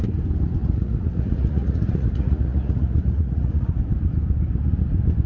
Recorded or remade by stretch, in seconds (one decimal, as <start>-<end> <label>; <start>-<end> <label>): 0.0-0.6 recorded; 0.6-3.8 remade; 3.8-5.3 recorded